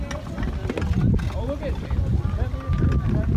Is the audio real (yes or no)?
yes